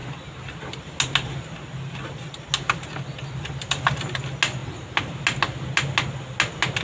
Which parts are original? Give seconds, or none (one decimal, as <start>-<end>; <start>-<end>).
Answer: 0.0-6.8